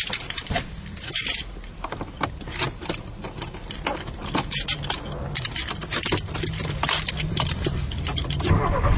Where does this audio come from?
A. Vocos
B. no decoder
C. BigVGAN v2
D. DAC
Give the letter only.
C